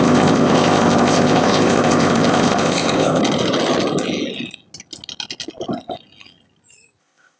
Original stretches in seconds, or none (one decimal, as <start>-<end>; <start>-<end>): 3.2-7.0